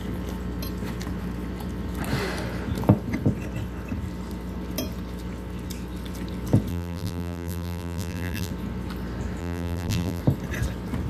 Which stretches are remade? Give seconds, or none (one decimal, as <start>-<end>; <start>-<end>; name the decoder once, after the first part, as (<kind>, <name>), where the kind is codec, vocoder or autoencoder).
6.7-8.5 (vocoder, BigVGAN v2); 9.4-10.2